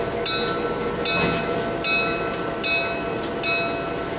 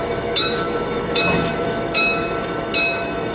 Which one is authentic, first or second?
first